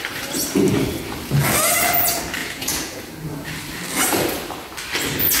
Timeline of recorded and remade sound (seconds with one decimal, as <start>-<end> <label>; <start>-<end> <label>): 0.0-2.4 recorded; 2.4-3.0 remade; 3.0-5.4 recorded